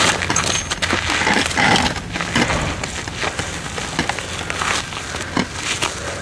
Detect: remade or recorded recorded